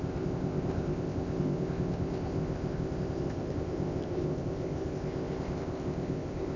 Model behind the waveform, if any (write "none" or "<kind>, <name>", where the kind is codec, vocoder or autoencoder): codec, ZipCodec